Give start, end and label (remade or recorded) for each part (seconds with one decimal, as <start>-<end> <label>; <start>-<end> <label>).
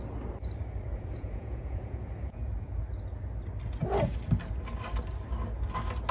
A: 0.0-0.9 recorded; 0.9-2.5 remade; 2.5-6.1 recorded